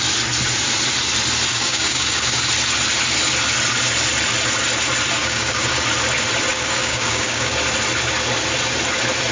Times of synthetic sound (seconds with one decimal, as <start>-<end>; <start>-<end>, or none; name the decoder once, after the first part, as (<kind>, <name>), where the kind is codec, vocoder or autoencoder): 1.5-2.4 (codec, DAC); 5.2-5.8; 6.5-7.5